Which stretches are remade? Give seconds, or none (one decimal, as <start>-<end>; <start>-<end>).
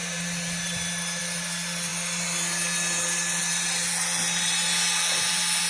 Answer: 0.0-5.7